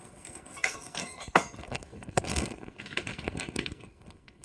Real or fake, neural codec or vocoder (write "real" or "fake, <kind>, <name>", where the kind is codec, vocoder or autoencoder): fake, codec, SNAC